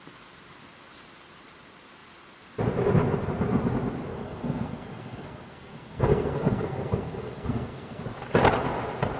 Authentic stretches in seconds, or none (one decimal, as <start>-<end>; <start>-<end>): 0.0-4.1; 8.0-9.2